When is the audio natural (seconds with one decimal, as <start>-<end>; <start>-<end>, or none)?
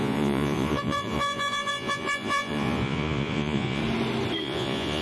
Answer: 3.8-4.4